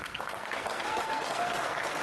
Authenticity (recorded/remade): remade